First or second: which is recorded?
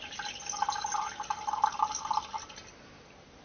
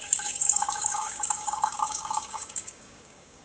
first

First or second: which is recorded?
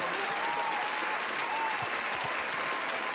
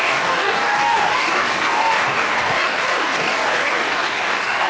first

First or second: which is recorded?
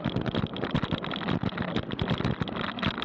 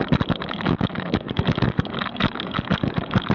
first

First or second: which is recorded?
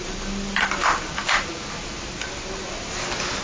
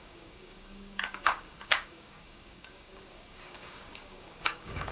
first